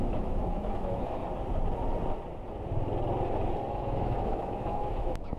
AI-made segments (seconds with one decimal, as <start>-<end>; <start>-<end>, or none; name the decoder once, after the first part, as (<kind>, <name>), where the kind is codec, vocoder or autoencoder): 0.0-1.2 (autoencoder, DAC-VAE); 3.7-5.4